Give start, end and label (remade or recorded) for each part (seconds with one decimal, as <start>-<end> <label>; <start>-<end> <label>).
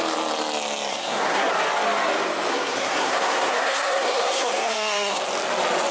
0.0-0.9 recorded; 0.9-1.5 remade; 1.5-2.5 recorded; 2.5-5.2 remade; 5.2-5.9 recorded